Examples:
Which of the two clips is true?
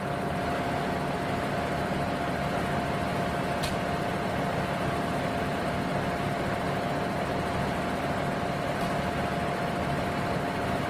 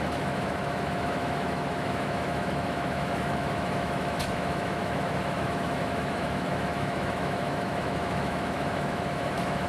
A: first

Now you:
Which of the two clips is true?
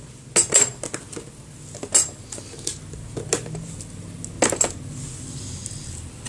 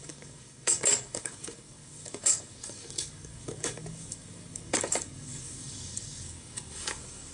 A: first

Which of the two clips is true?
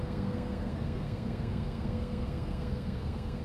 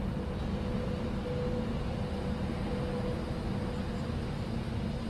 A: second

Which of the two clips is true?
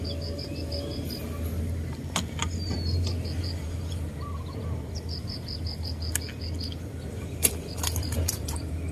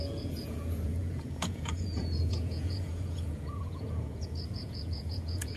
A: first